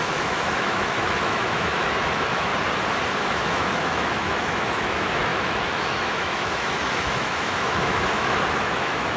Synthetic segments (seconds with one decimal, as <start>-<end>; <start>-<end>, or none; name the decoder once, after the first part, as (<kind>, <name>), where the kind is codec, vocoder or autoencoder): 0.0-2.5 (autoencoder, DAC-VAE); 3.2-9.2